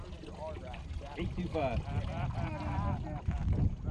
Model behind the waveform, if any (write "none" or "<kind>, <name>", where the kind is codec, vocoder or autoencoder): none